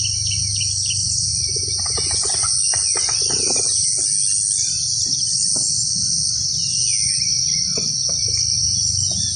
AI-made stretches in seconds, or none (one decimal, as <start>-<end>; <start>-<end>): 1.3-1.9